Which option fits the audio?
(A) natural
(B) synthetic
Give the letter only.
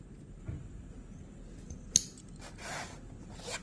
A